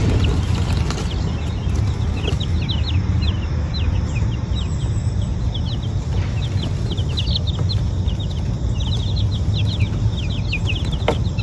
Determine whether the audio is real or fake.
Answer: real